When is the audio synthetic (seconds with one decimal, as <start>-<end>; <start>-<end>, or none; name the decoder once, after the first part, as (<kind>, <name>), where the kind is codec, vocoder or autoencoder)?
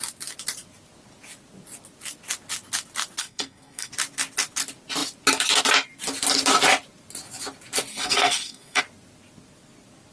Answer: 3.2-3.9 (codec, SNAC); 7.9-8.8